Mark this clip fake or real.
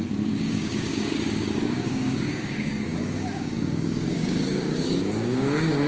fake